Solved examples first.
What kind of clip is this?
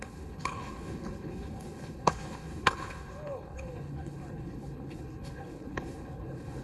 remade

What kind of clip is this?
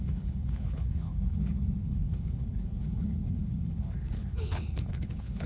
remade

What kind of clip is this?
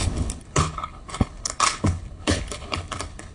remade